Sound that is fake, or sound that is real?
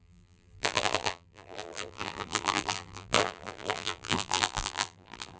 fake